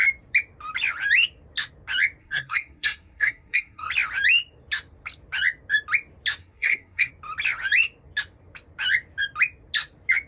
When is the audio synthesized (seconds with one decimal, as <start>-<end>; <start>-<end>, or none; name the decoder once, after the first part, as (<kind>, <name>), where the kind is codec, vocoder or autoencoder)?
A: 2.2-3.9 (codec, SNAC); 6.4-7.1